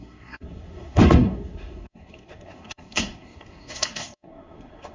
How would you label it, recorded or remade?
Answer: remade